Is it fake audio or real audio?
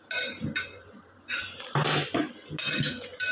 real